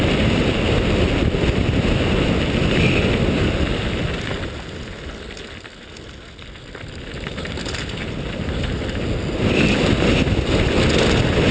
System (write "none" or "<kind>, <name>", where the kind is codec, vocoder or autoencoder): none